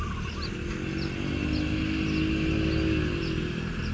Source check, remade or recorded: recorded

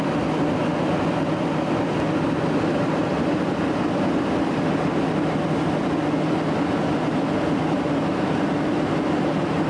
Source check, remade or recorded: recorded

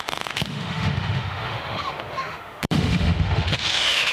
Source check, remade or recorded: remade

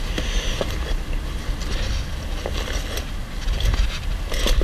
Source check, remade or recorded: recorded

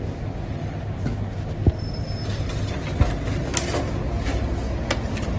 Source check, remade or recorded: recorded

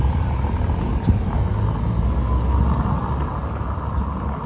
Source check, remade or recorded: recorded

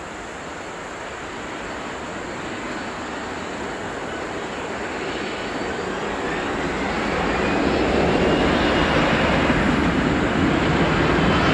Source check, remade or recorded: recorded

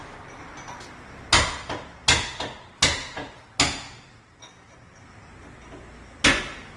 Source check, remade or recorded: recorded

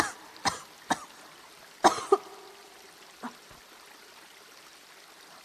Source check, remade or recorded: recorded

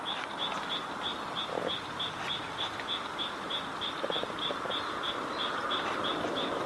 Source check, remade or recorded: recorded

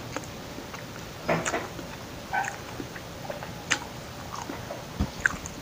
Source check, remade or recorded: recorded